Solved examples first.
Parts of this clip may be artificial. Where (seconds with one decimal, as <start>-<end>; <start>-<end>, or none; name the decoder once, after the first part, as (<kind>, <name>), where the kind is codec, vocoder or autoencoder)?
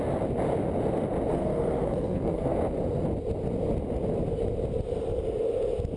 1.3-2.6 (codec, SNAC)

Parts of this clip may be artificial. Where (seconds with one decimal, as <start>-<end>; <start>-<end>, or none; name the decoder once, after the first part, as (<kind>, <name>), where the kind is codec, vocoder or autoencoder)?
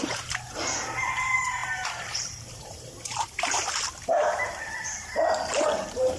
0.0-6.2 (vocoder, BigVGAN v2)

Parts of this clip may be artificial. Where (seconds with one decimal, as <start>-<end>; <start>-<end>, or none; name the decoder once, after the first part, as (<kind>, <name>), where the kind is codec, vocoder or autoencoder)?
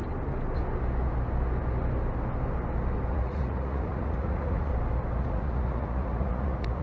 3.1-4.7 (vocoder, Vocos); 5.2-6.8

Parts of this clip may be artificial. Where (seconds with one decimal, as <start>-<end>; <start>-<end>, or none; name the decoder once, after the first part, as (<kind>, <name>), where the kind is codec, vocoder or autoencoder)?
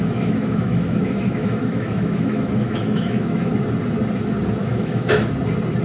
0.0-3.5 (autoencoder, DAC-VAE); 4.6-5.3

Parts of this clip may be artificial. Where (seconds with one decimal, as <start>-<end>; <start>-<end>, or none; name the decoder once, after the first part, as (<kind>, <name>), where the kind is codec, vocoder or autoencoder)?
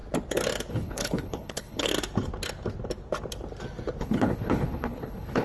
0.7-1.9 (codec, HILCodec); 4.0-5.4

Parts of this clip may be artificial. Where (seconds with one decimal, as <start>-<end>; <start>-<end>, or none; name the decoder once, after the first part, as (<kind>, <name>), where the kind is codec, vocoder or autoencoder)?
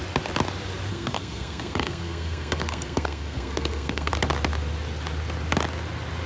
0.9-4.1 (codec, SNAC)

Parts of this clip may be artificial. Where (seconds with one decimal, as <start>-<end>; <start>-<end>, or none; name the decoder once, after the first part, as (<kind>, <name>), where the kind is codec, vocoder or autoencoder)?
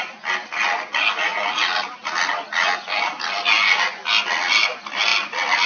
none